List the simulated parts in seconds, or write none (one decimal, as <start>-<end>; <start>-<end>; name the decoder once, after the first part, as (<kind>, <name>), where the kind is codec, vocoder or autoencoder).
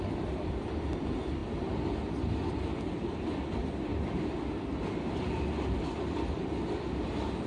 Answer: 0.0-1.4 (vocoder, BigVGAN v2); 2.9-3.9; 7.0-7.5